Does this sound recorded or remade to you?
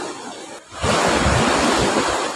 recorded